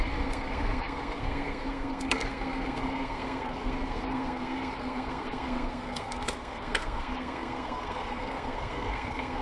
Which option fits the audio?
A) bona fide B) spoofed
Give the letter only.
B